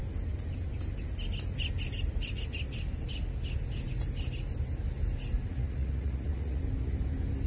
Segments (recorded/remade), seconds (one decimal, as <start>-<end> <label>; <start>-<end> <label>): 0.0-5.5 recorded; 5.5-6.6 remade; 6.6-7.5 recorded